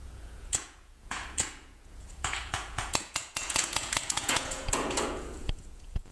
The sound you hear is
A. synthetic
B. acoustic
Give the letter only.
A